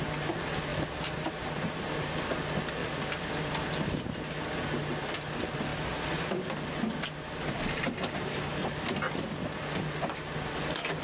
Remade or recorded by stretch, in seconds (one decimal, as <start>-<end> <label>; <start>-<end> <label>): 0.0-2.8 recorded; 2.8-3.6 remade; 3.6-5.7 recorded; 5.7-6.7 remade; 6.7-8.6 recorded; 8.6-9.2 remade; 9.2-11.0 recorded